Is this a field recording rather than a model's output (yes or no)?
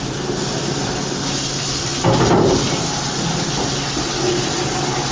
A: yes